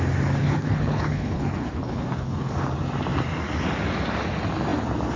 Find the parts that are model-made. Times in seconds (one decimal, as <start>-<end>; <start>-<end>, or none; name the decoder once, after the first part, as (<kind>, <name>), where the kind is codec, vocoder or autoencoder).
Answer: 0.4-2.5 (codec, HILCodec)